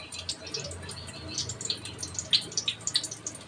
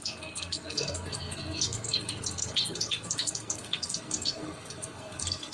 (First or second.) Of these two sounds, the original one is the first